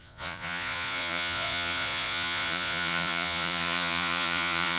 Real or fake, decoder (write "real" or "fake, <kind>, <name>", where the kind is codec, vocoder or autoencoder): fake, vocoder, Vocos